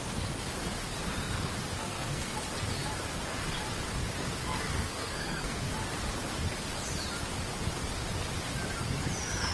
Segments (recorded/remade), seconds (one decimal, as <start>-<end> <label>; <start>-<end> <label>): 0.0-1.8 recorded; 1.8-2.4 remade; 2.4-4.7 recorded; 4.7-5.6 remade; 5.6-9.5 recorded

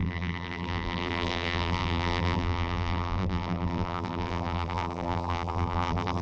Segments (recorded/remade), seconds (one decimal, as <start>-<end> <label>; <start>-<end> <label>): 0.0-6.2 remade

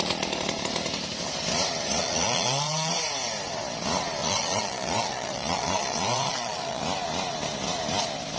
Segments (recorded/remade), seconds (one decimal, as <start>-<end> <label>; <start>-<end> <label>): 0.0-2.0 recorded; 2.0-2.9 remade; 2.9-4.2 recorded; 4.2-6.8 remade; 6.8-8.4 recorded

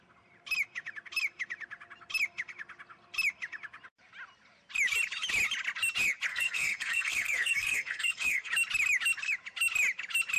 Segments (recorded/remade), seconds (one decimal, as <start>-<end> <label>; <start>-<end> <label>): 0.0-6.3 recorded; 6.3-8.5 remade; 8.5-10.4 recorded

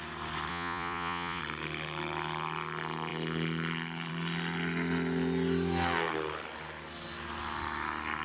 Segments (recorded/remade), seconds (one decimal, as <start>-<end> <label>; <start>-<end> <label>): 0.0-0.5 recorded; 0.5-1.4 remade; 1.4-8.2 recorded

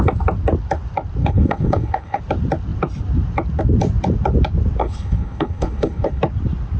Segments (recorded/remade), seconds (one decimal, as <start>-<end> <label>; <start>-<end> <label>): 0.0-1.2 recorded; 1.2-2.2 remade; 2.2-4.8 recorded; 4.8-6.2 remade; 6.2-6.8 recorded